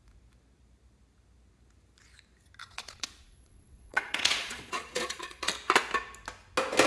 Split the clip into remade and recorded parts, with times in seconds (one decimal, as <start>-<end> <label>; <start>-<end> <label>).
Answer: 0.0-2.6 recorded; 2.6-5.5 remade; 5.5-6.9 recorded